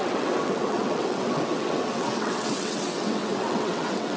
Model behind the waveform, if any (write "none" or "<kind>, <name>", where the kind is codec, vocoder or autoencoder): vocoder, WaveNeXt